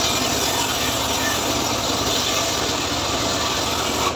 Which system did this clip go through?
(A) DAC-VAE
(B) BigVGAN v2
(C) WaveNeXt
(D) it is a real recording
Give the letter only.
D